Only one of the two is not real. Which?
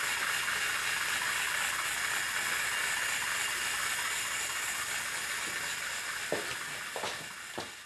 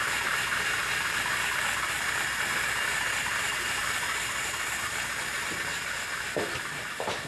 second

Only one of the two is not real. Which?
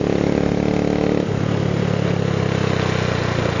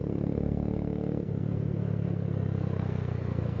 second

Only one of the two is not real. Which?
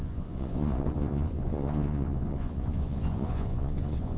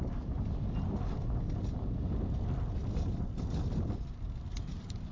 first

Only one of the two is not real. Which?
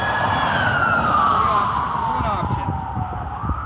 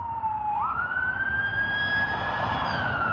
second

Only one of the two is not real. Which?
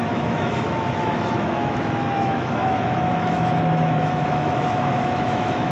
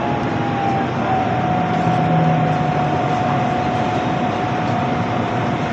first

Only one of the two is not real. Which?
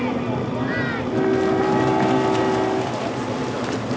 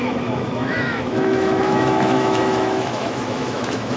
second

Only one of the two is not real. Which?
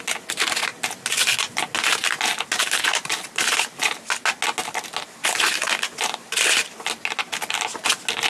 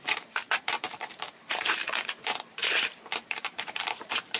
second